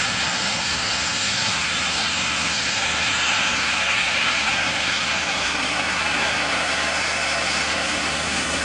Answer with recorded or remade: remade